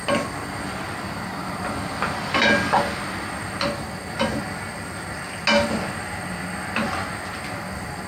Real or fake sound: real